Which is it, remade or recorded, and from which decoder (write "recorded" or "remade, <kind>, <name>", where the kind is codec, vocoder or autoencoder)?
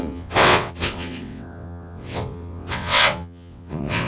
remade, vocoder, WaveNeXt